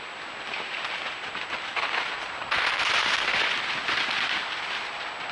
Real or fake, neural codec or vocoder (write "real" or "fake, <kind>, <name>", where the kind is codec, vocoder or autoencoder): real